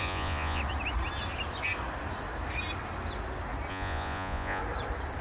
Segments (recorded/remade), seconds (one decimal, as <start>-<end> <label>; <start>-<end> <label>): 0.0-0.6 remade; 0.6-3.7 recorded; 3.7-4.6 remade; 4.6-5.2 recorded